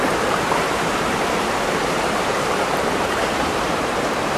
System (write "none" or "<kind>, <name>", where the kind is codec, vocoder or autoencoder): vocoder, BigVGAN v2